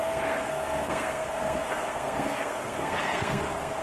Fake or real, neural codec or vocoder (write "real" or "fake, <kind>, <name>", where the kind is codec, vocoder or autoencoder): fake, codec, SNAC